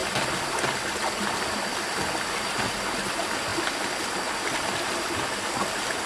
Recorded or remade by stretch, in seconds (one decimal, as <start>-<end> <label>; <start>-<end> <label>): 0.0-6.1 recorded